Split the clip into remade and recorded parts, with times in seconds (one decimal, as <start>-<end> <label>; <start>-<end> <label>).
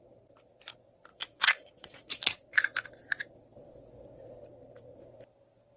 0.0-1.1 recorded; 1.1-2.3 remade; 2.3-5.8 recorded